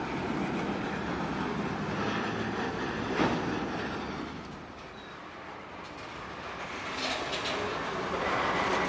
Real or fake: real